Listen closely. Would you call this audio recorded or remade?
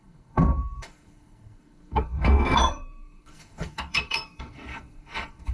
remade